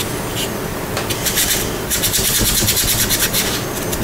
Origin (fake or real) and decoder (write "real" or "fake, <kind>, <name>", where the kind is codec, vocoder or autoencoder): real